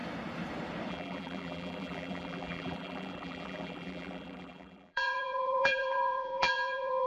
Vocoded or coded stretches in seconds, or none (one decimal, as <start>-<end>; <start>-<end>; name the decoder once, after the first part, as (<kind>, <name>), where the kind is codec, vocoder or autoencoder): 0.9-7.1 (vocoder, BigVGAN v2)